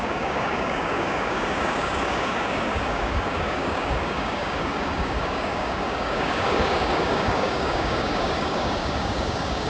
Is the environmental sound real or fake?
fake